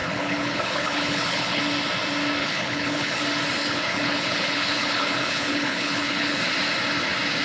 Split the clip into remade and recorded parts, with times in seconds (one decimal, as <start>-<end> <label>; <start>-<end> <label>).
0.0-1.6 remade; 1.6-2.4 recorded; 2.4-3.2 remade; 3.2-3.6 recorded; 3.6-6.4 remade; 6.4-7.4 recorded